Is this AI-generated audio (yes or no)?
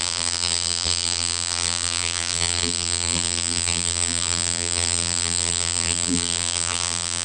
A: yes